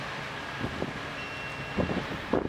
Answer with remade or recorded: recorded